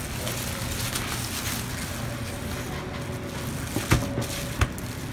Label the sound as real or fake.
real